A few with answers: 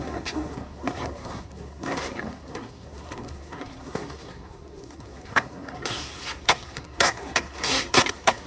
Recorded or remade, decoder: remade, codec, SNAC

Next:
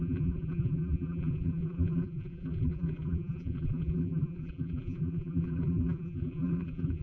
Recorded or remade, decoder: remade, vocoder, BigVGAN v2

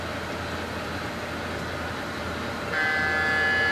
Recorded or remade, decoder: recorded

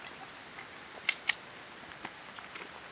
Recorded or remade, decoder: recorded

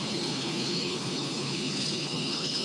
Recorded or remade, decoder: remade, codec, HILCodec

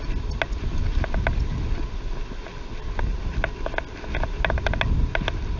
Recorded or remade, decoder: recorded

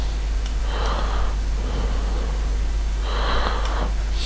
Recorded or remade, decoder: recorded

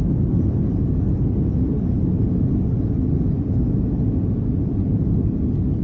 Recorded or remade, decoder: recorded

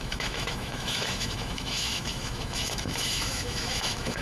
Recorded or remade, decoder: remade, autoencoder, DAC-VAE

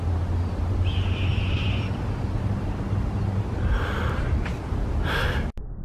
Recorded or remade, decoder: recorded